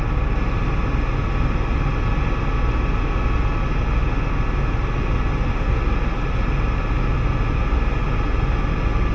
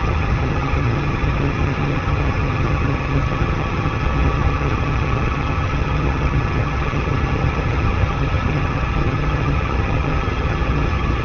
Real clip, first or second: first